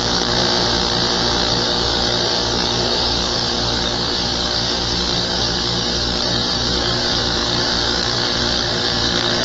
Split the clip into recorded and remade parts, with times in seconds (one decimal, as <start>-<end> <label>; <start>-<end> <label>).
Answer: 0.0-0.4 remade; 0.4-1.5 recorded; 1.5-9.4 remade